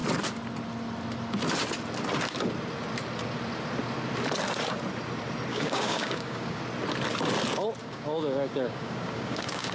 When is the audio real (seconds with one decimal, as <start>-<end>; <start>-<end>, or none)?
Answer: 0.0-5.5; 6.6-7.8